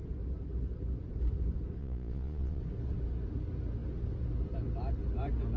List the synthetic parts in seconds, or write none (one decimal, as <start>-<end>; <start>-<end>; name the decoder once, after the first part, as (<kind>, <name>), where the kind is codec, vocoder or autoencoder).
1.8-2.6 (vocoder, Vocos)

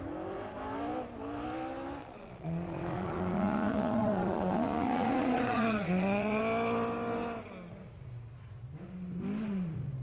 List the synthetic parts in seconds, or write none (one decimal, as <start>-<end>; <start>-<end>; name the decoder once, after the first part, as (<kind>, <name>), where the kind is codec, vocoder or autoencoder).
2.0-6.4 (vocoder, Vocos)

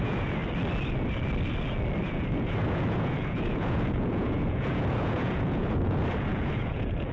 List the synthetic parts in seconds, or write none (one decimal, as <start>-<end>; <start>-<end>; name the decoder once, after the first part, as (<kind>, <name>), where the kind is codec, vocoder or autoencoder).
0.0-0.4 (vocoder, Vocos); 2.0-7.1

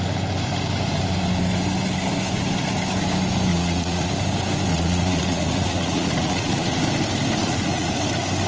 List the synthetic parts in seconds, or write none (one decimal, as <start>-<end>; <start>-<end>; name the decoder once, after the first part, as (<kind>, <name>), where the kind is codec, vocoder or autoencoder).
3.5-4.1 (vocoder, Vocos); 4.7-6.8; 7.4-8.0

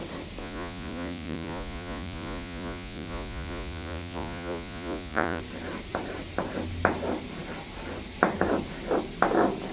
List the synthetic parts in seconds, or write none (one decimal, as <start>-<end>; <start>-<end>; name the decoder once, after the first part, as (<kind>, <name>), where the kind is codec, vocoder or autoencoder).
0.4-5.4 (vocoder, Vocos)